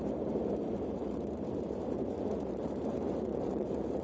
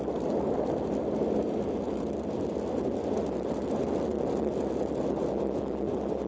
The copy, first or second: first